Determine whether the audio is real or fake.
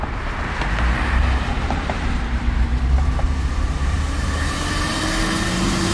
fake